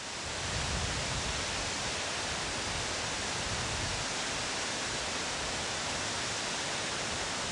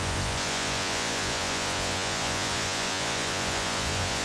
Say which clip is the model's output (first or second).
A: second